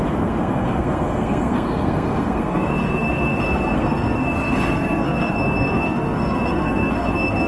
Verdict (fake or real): fake